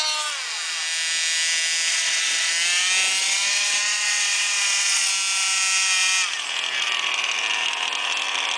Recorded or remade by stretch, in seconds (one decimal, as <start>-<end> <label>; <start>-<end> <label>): 0.0-1.9 recorded; 1.9-2.5 remade; 2.5-3.2 recorded; 3.2-5.1 remade; 5.1-8.6 recorded

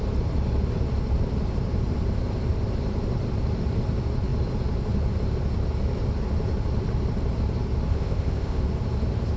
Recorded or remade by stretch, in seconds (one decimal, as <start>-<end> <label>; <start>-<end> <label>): 0.0-7.9 recorded; 7.9-8.6 remade; 8.6-9.4 recorded

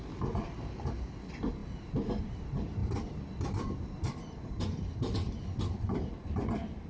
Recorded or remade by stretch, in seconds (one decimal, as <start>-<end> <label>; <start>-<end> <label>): 0.0-2.8 recorded; 2.8-5.0 remade; 5.0-6.9 recorded

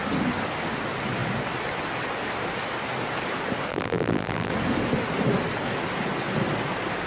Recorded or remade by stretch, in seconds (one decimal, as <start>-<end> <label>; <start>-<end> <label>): 0.0-3.7 recorded; 3.7-4.5 remade; 4.5-7.1 recorded

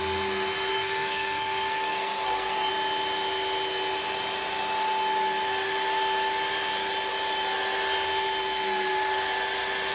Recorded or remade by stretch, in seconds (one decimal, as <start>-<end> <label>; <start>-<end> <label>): 0.0-0.7 recorded; 0.7-2.7 remade; 2.7-9.9 recorded